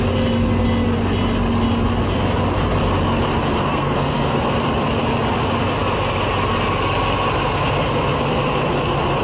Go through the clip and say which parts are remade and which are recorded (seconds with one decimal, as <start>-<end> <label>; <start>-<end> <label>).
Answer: 0.0-3.7 recorded; 3.7-4.4 remade; 4.4-9.2 recorded